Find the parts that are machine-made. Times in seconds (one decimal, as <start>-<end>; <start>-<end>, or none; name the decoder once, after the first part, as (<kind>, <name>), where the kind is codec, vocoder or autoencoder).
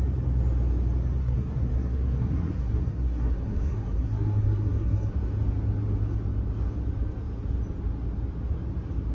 1.2-5.1 (codec, SNAC)